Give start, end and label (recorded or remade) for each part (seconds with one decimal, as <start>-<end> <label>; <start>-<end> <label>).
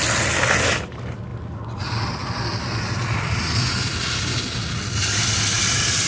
0.0-6.1 recorded